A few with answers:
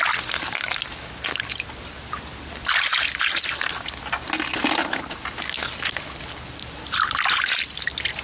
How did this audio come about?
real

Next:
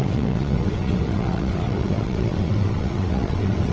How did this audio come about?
fake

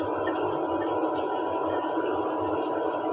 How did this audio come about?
real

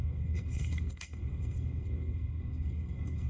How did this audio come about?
fake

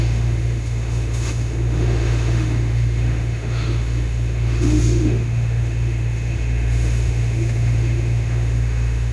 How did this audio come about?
fake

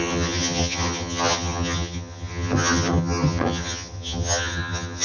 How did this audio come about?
fake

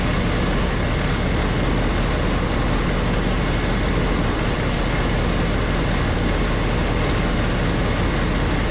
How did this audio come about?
real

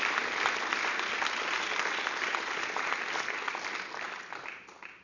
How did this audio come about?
real